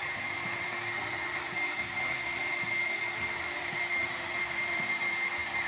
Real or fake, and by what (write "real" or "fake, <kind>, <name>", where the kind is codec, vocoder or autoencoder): fake, vocoder, BigVGAN v2